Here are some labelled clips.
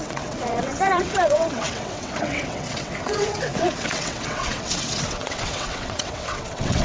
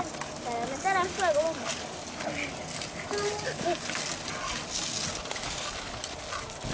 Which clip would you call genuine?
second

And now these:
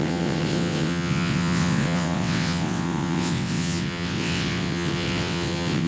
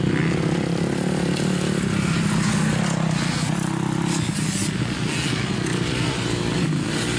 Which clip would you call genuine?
second